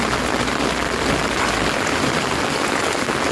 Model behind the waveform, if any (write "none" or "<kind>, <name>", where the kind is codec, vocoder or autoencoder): none